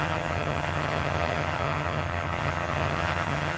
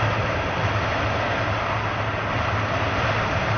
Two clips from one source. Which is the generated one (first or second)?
first